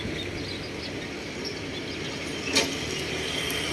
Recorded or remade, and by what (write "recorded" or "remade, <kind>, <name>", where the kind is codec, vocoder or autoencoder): recorded